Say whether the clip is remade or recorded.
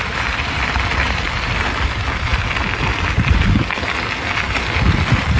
recorded